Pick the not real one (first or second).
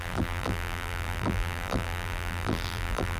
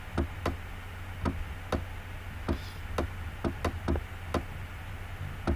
first